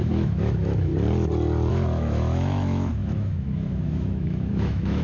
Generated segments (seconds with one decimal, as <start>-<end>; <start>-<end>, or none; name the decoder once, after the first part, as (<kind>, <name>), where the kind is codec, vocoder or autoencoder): 0.0-0.9 (autoencoder, DAC-VAE); 1.7-5.0